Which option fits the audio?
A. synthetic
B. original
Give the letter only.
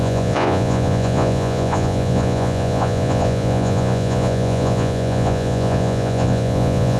A